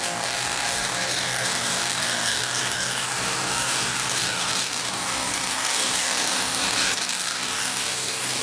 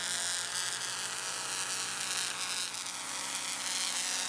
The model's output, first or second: first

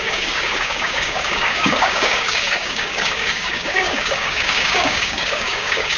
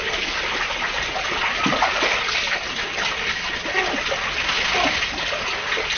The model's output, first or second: first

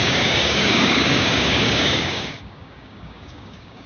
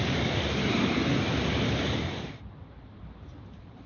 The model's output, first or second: first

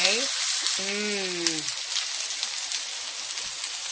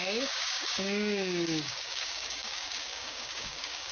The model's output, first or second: second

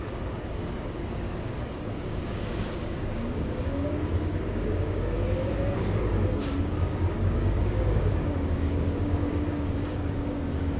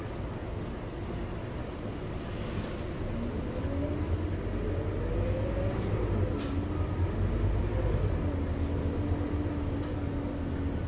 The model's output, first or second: first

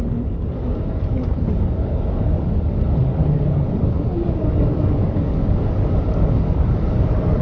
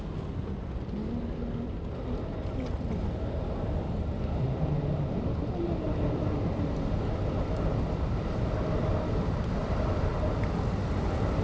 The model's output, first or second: first